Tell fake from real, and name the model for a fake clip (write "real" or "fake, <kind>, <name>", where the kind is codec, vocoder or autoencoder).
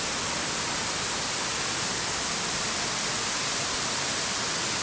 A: real